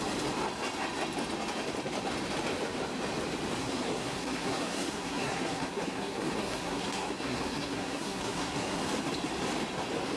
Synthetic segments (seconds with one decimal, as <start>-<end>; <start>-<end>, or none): 3.6-8.8